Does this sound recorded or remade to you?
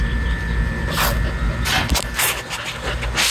recorded